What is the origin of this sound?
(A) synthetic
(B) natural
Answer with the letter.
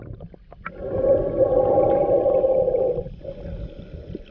B